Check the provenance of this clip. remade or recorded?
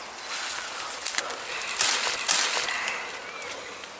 recorded